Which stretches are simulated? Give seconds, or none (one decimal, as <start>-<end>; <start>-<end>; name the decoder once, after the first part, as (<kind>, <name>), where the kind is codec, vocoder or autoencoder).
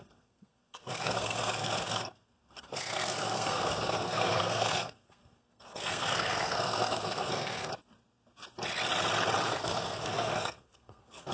0.0-7.7 (codec, SNAC); 9.5-11.3